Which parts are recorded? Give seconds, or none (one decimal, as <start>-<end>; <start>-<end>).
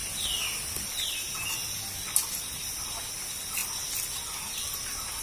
0.0-5.2